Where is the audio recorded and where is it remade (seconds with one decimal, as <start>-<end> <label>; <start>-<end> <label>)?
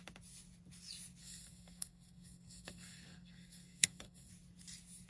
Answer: 0.0-1.2 recorded; 1.2-4.3 remade; 4.3-5.1 recorded